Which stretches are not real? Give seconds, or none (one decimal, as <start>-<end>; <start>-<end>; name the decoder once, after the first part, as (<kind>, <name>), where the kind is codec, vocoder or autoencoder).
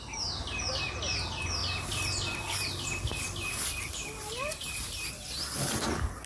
none